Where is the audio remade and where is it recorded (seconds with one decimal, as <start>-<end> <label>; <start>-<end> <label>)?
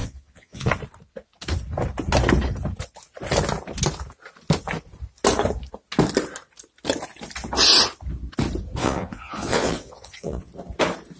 0.0-0.7 remade; 0.7-8.8 recorded; 8.8-10.5 remade; 10.5-11.2 recorded